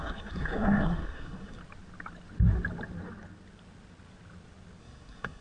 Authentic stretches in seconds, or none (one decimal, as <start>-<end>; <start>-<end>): 1.6-4.8